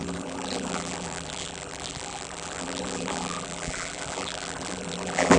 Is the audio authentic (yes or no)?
no